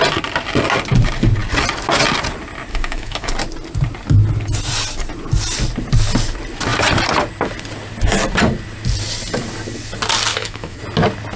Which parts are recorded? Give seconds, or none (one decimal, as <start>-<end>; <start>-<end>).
0.0-2.7; 3.3-10.3; 10.8-11.4